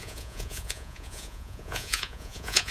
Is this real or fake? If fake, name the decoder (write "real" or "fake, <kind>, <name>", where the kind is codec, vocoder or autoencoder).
fake, vocoder, Vocos